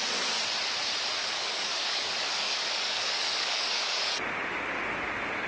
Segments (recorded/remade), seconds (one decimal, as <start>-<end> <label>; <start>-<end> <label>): 0.0-1.2 recorded; 1.2-4.2 remade; 4.2-5.5 recorded